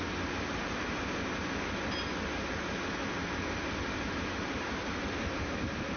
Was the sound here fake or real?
real